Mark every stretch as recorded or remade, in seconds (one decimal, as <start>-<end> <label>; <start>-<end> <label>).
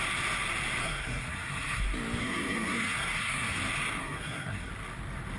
0.0-0.8 recorded; 0.8-1.8 remade; 1.8-2.2 recorded; 2.2-3.6 remade; 3.6-4.0 recorded; 4.0-4.7 remade; 4.7-5.4 recorded